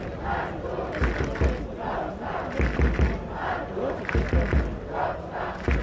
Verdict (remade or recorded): recorded